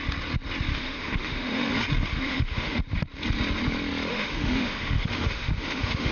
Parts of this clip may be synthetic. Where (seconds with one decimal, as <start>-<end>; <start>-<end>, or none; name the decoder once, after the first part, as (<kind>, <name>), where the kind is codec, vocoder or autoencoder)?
0.7-1.7 (autoencoder, DAC-VAE); 2.1-2.8; 4.1-6.1